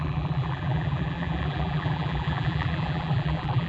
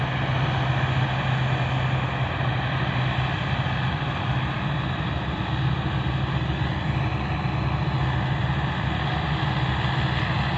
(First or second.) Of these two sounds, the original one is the second